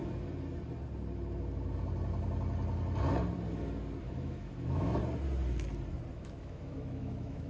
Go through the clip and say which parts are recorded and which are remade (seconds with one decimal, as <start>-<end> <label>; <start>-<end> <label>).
0.0-4.0 recorded; 4.0-5.0 remade; 5.0-6.1 recorded; 6.1-7.5 remade